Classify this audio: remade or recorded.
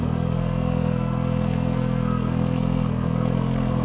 remade